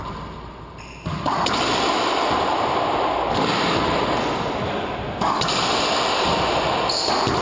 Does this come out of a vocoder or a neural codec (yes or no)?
no